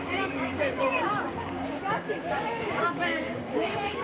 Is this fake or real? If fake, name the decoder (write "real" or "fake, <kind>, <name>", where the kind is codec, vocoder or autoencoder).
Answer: fake, codec, DAC